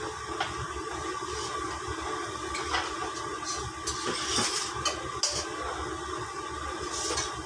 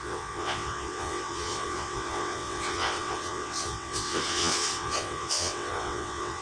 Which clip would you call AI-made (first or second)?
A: second